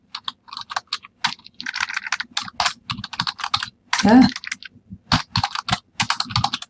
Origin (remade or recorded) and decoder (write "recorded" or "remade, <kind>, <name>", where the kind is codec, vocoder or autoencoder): recorded